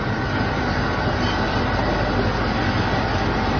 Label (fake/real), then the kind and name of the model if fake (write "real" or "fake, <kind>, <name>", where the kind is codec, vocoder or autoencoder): real